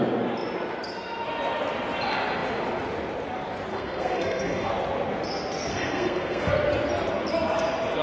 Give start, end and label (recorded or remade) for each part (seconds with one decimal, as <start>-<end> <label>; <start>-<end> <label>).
0.0-3.7 recorded; 3.7-4.7 remade; 4.7-5.7 recorded; 5.7-6.5 remade; 6.5-8.0 recorded